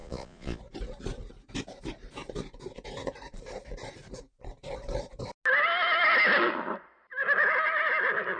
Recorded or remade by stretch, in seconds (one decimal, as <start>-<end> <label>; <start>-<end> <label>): 0.0-0.6 remade; 0.6-8.4 recorded